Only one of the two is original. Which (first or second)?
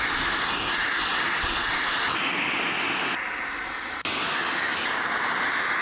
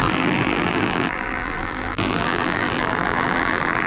first